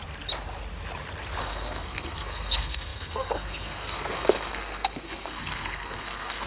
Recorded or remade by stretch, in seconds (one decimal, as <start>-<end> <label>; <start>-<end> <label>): 0.0-1.4 recorded; 1.4-6.5 remade